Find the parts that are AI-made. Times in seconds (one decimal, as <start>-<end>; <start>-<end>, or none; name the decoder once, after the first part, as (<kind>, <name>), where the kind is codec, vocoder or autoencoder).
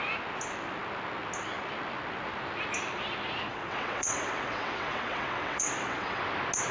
3.5-6.2 (vocoder, WaveNeXt)